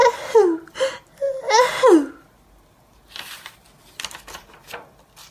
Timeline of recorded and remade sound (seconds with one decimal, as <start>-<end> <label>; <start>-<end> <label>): 0.0-5.3 recorded